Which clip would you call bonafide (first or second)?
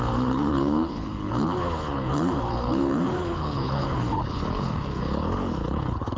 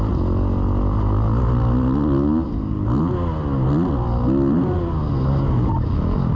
second